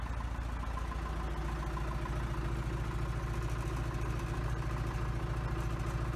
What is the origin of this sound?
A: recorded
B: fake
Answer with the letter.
A